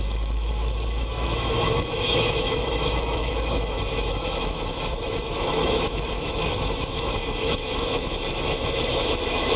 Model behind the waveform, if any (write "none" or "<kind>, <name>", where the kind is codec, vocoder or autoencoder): autoencoder, DAC-VAE